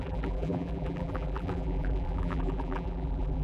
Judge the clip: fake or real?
fake